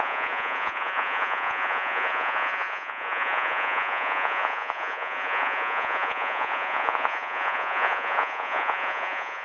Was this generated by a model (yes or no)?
yes